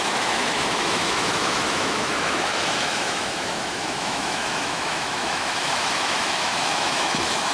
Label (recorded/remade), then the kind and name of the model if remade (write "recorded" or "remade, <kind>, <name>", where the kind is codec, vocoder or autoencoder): remade, autoencoder, DAC-VAE